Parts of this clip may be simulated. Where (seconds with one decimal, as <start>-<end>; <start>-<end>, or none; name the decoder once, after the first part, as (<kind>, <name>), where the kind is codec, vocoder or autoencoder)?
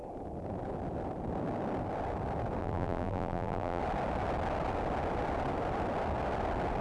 2.6-3.8 (vocoder, BigVGAN v2)